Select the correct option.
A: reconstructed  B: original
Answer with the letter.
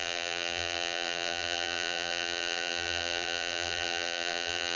A